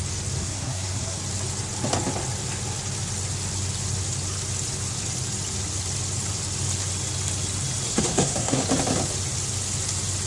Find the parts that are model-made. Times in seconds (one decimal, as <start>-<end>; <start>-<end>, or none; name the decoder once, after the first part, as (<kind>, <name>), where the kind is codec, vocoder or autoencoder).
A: 0.4-1.2 (codec, SNAC); 7.9-8.6